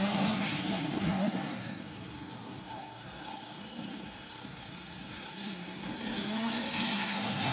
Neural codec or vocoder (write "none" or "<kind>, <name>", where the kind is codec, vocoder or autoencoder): codec, SNAC